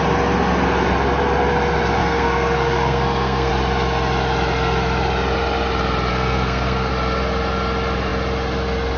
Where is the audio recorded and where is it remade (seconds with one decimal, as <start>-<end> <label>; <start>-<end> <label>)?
0.0-2.0 recorded; 2.0-3.5 remade; 3.5-6.1 recorded; 6.1-6.9 remade; 6.9-9.0 recorded